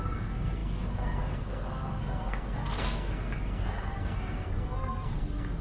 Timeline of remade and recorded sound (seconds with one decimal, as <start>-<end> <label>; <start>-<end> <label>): 0.0-5.6 remade